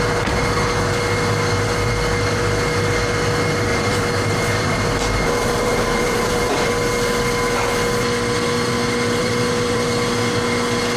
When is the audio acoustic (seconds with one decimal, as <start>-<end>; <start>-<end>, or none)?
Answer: 0.0-3.7; 6.7-9.2; 9.9-11.0